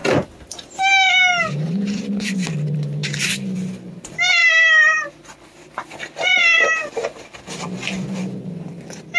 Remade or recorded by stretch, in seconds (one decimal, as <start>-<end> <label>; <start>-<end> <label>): 0.0-9.2 recorded